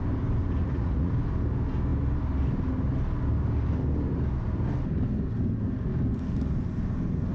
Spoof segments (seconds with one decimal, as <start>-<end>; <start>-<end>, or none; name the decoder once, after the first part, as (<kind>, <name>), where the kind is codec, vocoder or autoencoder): 0.6-1.1 (vocoder, Vocos)